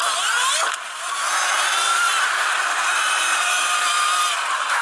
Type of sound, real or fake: real